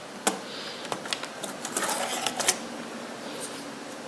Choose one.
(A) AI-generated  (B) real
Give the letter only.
B